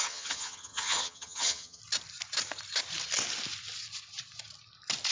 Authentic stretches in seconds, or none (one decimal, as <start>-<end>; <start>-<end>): 1.8-5.1